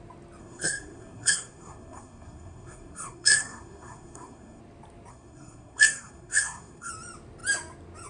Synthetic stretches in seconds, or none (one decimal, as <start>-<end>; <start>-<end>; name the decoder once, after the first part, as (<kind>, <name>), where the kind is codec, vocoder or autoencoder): 0.4-4.6 (codec, SNAC); 5.1-6.9